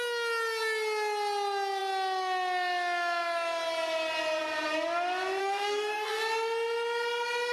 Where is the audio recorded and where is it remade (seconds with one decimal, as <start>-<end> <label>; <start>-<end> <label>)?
0.0-5.4 recorded; 5.4-6.2 remade; 6.2-7.5 recorded